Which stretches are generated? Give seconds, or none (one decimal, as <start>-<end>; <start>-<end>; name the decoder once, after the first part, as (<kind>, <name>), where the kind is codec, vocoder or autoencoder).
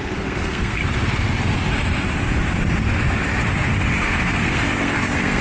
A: 0.0-0.8 (codec, SNAC); 4.0-5.4